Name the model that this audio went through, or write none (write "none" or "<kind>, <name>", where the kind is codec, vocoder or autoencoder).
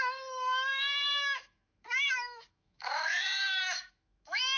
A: autoencoder, DAC-VAE